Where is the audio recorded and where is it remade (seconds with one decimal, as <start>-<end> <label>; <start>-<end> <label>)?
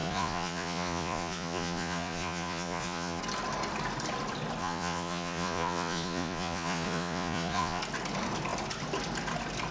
0.0-3.2 remade; 3.2-4.6 recorded; 4.6-7.8 remade; 7.8-9.7 recorded